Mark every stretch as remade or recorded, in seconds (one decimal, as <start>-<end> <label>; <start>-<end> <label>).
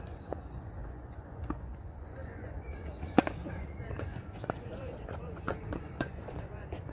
0.0-6.9 remade